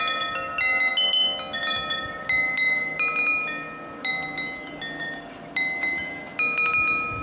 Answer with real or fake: real